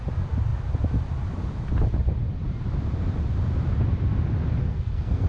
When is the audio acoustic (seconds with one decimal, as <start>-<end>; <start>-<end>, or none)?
0.0-4.6